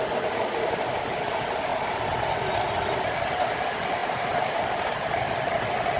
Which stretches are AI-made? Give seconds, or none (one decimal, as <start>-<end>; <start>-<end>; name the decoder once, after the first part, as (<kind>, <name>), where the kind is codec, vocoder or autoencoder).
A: 4.0-4.6 (vocoder, BigVGAN v2)